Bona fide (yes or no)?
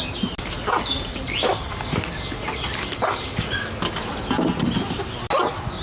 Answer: yes